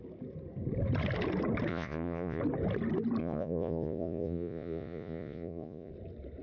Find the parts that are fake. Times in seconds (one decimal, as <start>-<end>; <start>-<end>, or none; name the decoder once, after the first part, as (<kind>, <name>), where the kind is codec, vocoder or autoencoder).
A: 1.7-2.4 (vocoder, Vocos); 3.2-5.9